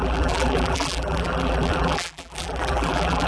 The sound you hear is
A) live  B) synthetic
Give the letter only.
B